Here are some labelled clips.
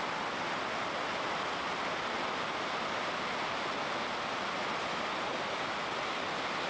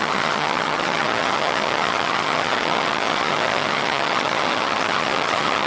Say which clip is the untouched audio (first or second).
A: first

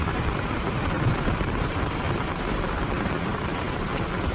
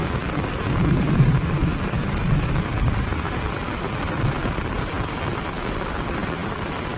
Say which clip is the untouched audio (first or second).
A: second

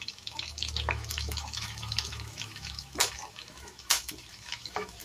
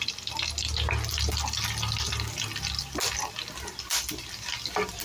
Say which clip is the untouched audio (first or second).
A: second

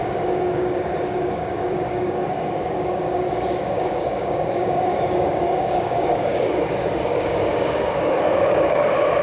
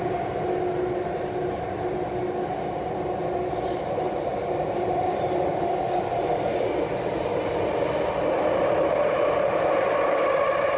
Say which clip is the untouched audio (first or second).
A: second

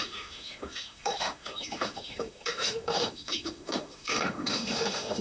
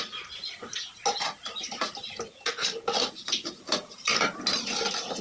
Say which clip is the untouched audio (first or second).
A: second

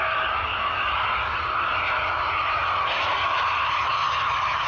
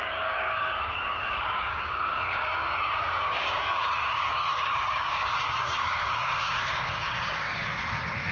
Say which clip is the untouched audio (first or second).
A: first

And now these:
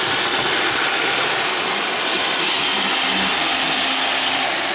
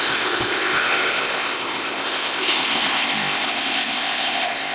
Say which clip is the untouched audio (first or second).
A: first